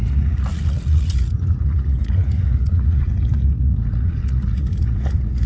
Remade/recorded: remade